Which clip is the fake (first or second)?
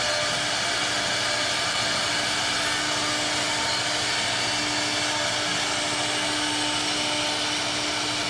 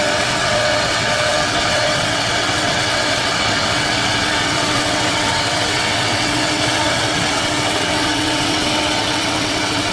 second